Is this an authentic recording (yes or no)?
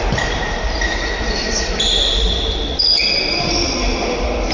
yes